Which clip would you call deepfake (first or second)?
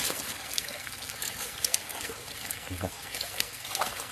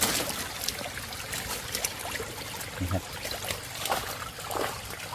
first